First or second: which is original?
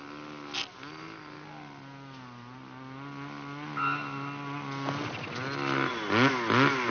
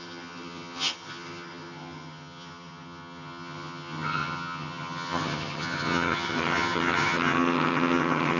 first